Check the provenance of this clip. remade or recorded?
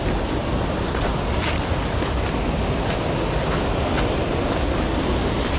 recorded